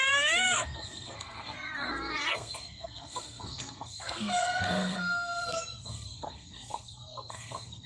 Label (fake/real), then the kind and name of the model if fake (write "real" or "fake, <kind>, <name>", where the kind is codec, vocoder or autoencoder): fake, codec, SNAC